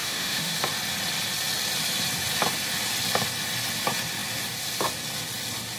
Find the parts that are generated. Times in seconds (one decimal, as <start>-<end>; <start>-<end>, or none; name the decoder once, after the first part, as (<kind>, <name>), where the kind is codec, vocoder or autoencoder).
0.0-0.6 (autoencoder, DAC-VAE)